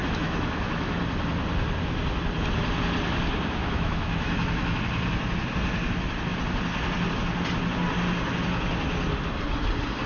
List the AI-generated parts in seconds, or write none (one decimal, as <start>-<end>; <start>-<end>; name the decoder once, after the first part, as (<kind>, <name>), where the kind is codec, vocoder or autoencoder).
0.0-1.0 (autoencoder, DAC-VAE); 3.6-4.8